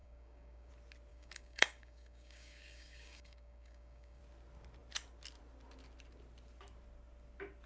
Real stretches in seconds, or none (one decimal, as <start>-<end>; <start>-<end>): 0.7-1.1; 4.2-7.7